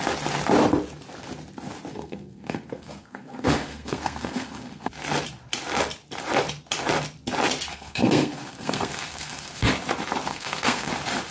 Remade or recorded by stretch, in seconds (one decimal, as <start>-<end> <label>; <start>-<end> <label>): 0.0-1.9 recorded; 1.9-4.9 remade; 4.9-7.7 recorded; 7.7-9.7 remade; 9.7-10.3 recorded; 10.3-10.9 remade; 10.9-11.3 recorded